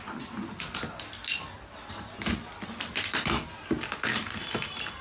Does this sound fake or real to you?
real